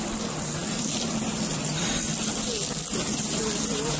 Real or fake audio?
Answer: real